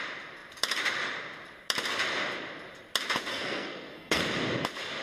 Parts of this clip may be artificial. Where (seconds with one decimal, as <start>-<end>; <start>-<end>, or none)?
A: 3.3-4.2